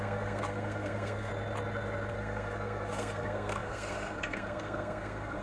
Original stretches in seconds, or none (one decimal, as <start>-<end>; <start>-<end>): 1.3-2.1